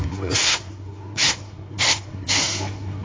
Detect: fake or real fake